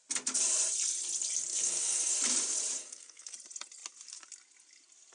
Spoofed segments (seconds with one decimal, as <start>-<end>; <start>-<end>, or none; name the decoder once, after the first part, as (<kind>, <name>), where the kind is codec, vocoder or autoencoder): 1.5-2.1 (codec, SNAC); 2.8-3.3